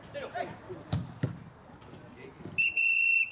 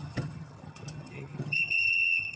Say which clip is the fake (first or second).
second